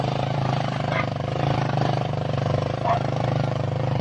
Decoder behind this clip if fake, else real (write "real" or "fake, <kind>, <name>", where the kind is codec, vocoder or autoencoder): fake, vocoder, BigVGAN v2